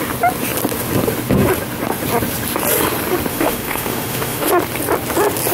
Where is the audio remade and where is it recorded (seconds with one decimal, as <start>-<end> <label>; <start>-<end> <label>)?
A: 0.0-3.3 recorded; 3.3-4.5 remade; 4.5-5.5 recorded